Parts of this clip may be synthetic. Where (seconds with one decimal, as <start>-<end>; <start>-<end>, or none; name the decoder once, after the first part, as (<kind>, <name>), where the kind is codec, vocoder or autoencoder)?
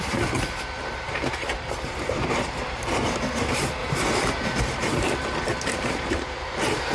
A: 0.0-3.8 (vocoder, BigVGAN v2); 4.6-6.9